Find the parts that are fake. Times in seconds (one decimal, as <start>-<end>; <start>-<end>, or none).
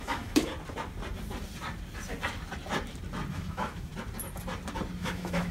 0.0-0.5; 3.3-3.9; 5.0-5.5